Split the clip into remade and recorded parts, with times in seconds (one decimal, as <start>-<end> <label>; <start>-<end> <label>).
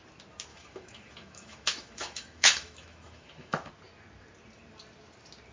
0.0-0.5 recorded; 0.5-3.7 remade; 3.7-5.5 recorded